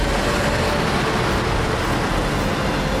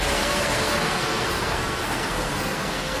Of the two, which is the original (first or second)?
first